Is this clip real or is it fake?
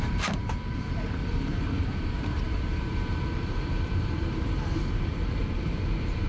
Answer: fake